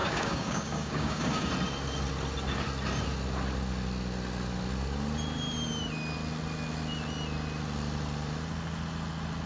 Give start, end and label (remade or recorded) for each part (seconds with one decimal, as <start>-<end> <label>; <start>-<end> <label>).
0.0-1.5 remade; 1.5-9.5 recorded